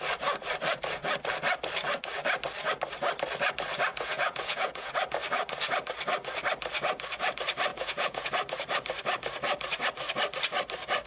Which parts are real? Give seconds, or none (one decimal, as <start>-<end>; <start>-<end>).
0.0-3.9; 4.9-7.7; 8.3-11.1